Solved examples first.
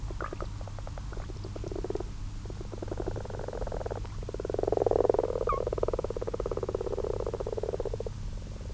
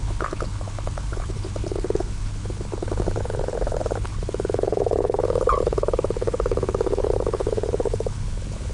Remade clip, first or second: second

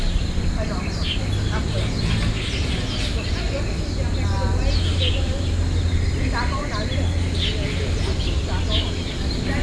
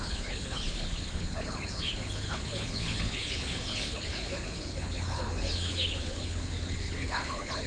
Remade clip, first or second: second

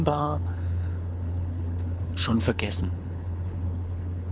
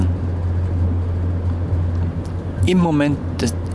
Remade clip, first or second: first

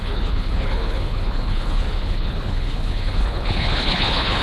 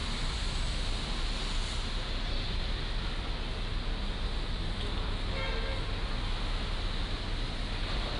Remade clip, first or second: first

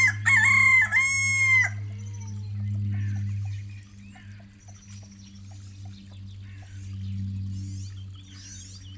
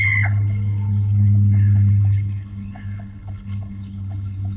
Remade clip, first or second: second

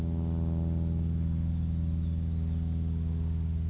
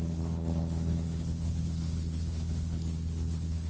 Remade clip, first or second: second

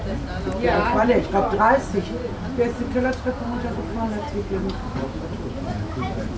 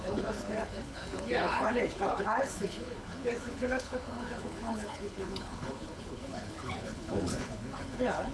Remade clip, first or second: second